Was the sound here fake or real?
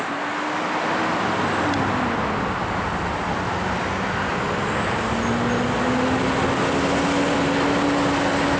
real